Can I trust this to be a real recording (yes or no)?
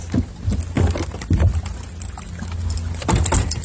yes